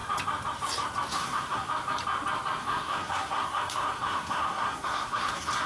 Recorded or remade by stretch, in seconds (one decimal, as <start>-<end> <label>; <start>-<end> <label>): 0.0-1.1 recorded; 1.1-1.7 remade; 1.7-2.6 recorded; 2.6-5.7 remade